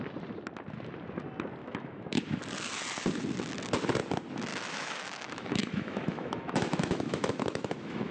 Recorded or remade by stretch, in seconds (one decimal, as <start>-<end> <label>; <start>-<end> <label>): 0.0-1.6 recorded; 1.6-2.2 remade; 2.2-4.5 recorded; 4.5-8.1 remade